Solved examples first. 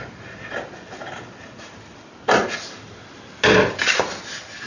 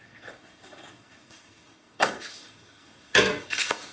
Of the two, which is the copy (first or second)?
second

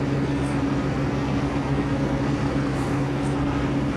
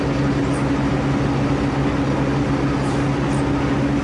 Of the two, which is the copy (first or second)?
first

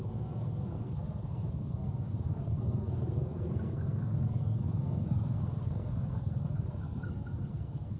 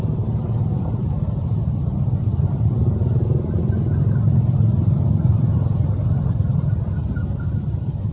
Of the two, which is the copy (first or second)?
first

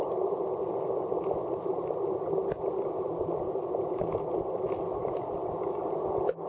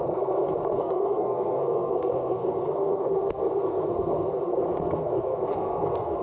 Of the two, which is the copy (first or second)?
second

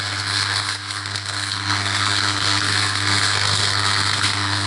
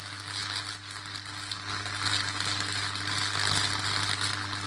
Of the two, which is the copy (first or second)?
first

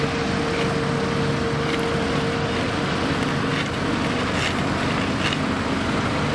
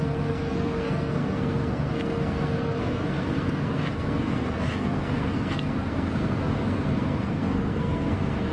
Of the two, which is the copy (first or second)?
second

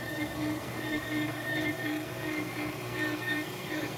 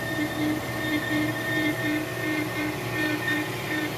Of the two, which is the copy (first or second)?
first